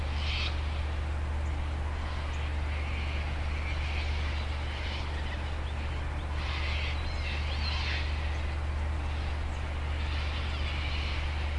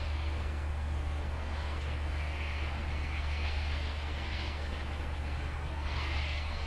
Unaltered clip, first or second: first